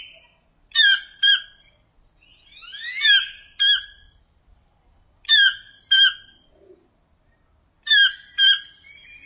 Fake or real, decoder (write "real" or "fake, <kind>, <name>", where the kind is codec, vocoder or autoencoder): real